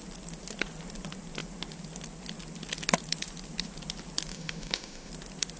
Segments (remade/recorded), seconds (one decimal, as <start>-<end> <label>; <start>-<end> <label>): 0.0-4.3 recorded; 4.3-5.1 remade; 5.1-5.6 recorded